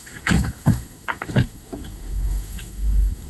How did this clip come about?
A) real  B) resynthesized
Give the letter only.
B